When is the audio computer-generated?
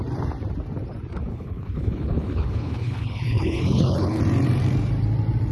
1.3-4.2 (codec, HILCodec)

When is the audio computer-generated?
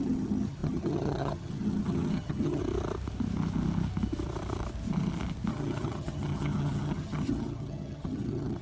0.0-2.6 (vocoder, HiFi-GAN); 5.5-8.6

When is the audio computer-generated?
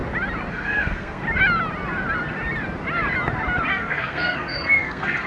0.5-1.2 (codec, SNAC); 3.7-5.3